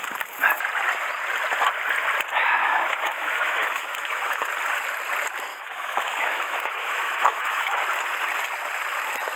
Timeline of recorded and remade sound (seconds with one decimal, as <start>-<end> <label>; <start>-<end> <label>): 0.0-2.6 recorded; 2.6-4.5 remade; 4.5-5.5 recorded; 5.5-7.8 remade; 7.8-9.4 recorded